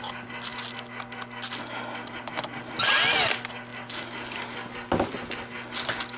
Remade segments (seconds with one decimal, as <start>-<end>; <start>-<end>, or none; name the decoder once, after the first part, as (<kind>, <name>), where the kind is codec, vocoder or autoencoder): none